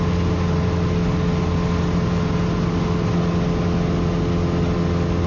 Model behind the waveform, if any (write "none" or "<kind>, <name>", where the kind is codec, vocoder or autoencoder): none